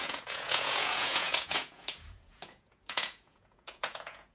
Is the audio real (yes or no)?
no